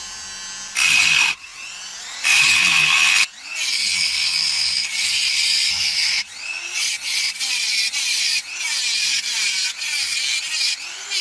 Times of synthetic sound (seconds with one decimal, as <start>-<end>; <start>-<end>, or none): 4.9-8.6